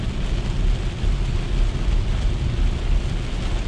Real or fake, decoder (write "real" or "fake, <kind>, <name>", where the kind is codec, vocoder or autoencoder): real